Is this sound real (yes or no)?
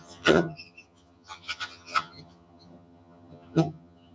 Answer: no